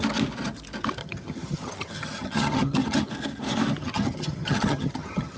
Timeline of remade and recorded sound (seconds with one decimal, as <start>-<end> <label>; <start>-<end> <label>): 0.0-1.0 recorded; 1.0-3.1 remade; 3.1-3.8 recorded; 3.8-5.4 remade